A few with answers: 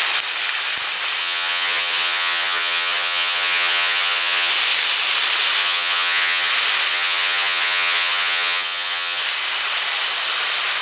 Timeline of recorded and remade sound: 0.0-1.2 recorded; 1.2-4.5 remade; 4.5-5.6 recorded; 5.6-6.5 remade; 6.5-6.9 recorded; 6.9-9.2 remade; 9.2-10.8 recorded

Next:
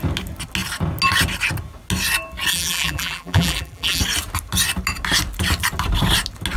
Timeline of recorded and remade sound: 0.0-2.5 recorded; 2.5-4.0 remade; 4.0-6.6 recorded

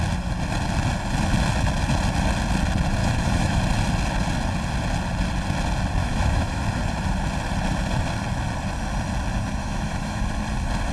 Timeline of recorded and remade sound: 0.0-3.0 recorded; 3.0-3.6 remade; 3.6-6.0 recorded; 6.0-6.6 remade; 6.6-9.6 recorded; 9.6-10.2 remade; 10.2-10.9 recorded